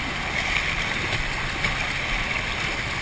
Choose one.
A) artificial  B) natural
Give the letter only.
B